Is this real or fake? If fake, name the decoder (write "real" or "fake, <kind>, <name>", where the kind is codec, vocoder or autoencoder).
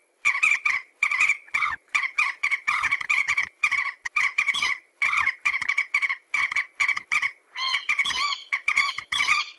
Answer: fake, vocoder, Vocos